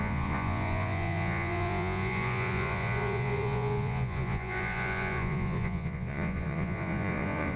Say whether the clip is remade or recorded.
remade